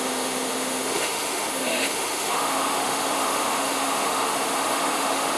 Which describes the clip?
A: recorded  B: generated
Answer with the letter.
B